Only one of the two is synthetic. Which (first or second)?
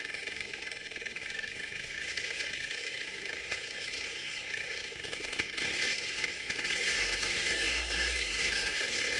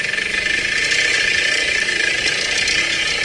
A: first